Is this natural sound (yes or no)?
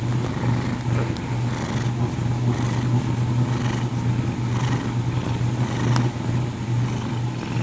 yes